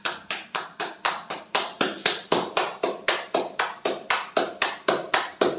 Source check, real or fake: fake